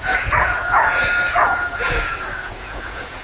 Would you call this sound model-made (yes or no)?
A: yes